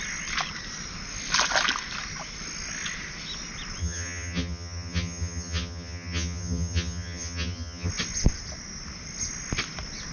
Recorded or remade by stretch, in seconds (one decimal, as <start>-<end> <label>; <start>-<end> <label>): 0.0-3.8 recorded; 3.8-7.9 remade; 7.9-10.1 recorded